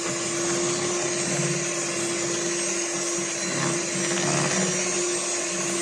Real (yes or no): yes